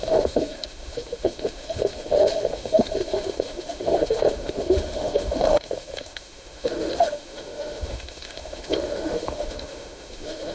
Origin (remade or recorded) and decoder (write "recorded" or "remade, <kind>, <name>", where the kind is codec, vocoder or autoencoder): remade, autoencoder, DAC-VAE